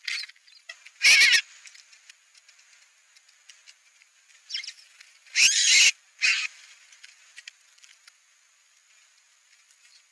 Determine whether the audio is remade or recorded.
recorded